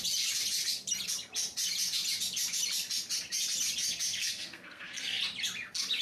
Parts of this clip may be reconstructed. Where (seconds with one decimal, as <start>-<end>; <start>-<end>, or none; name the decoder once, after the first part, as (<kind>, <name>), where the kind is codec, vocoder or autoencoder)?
4.2-5.2 (codec, SNAC)

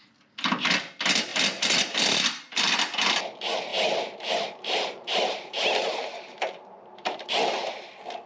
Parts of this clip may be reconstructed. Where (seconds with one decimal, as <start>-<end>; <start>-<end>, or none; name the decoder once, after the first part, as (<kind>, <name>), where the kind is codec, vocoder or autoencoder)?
1.3-2.7 (vocoder, BigVGAN v2); 3.7-7.3

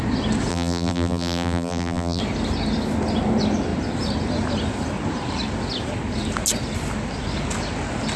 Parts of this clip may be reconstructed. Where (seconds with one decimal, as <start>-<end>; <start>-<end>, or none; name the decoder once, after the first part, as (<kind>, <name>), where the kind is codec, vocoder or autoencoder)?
0.5-2.2 (vocoder, BigVGAN v2)

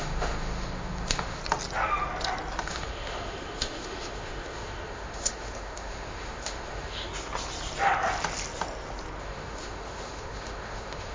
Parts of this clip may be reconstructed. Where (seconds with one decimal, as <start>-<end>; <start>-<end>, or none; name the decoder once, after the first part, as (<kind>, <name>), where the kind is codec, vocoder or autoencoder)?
0.0-1.4 (autoencoder, DAC-VAE); 2.6-7.1; 9.2-11.1

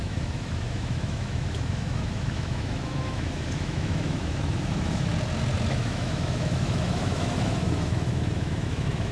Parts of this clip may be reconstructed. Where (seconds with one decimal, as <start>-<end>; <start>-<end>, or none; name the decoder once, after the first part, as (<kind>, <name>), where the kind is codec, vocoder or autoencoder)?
0.0-5.1 (autoencoder, DAC-VAE); 5.7-9.1

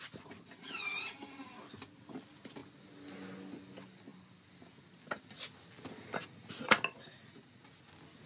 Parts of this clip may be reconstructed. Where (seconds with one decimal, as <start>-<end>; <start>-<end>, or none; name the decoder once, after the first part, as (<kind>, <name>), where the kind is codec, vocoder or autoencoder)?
none

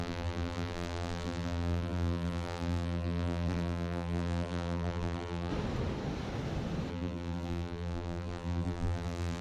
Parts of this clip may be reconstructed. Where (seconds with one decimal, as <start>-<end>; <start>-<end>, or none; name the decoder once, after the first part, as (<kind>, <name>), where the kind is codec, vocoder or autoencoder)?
0.0-5.5 (vocoder, BigVGAN v2); 6.9-9.4